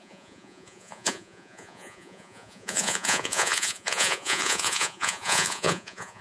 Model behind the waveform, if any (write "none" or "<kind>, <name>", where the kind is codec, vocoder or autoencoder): vocoder, Vocos